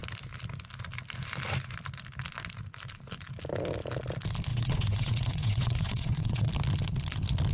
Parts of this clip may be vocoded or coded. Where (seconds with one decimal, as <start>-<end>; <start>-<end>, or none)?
4.5-6.5